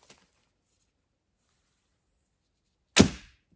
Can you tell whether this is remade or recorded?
recorded